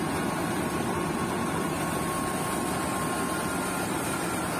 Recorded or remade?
recorded